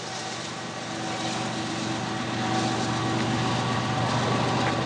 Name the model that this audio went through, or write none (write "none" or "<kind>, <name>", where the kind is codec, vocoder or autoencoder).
none